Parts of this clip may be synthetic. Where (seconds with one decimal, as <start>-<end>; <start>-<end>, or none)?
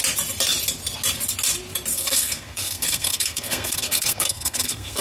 1.9-5.0